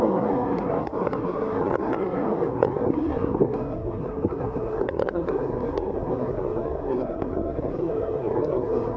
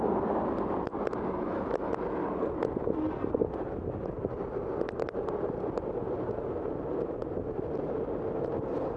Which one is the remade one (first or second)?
first